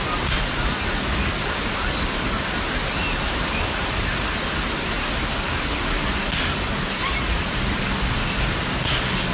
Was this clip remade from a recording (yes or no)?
no